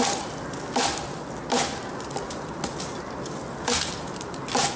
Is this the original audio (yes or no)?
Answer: yes